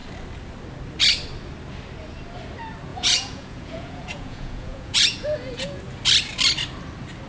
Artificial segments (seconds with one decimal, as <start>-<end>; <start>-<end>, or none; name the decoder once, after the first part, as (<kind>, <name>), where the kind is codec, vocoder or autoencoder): 2.9-5.8 (vocoder, Vocos)